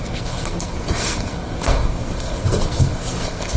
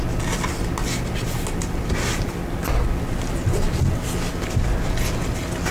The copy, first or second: first